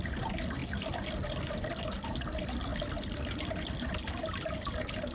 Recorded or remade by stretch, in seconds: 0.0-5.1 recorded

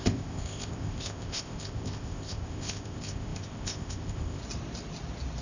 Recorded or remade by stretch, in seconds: 0.0-4.4 remade; 4.4-5.4 recorded

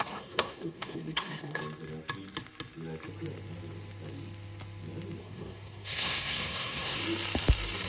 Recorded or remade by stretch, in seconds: 0.0-1.6 remade; 1.6-5.2 recorded; 5.2-7.0 remade; 7.0-7.9 recorded

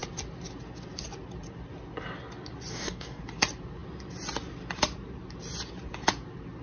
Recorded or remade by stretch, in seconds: 0.0-2.7 recorded; 2.7-3.2 remade; 3.2-6.6 recorded

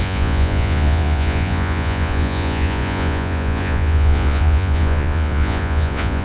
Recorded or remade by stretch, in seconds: 0.0-6.2 remade

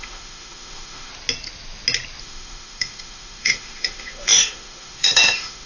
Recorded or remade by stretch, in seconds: 0.0-1.1 remade; 1.1-2.2 recorded; 2.2-5.7 remade

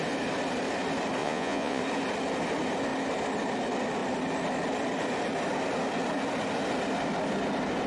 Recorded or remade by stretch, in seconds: 0.0-1.2 recorded; 1.2-1.8 remade; 1.8-7.9 recorded

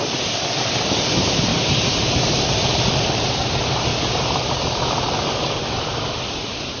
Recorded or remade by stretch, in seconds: 0.0-1.5 recorded; 1.5-3.1 remade; 3.1-3.9 recorded; 3.9-5.5 remade; 5.5-6.8 recorded